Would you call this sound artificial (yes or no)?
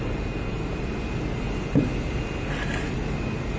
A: no